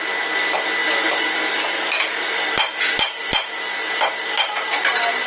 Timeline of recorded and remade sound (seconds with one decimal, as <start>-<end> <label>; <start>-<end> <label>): 0.0-5.3 recorded